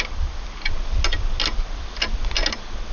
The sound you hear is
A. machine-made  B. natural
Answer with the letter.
B